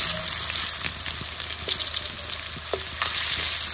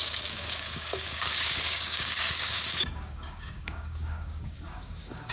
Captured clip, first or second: first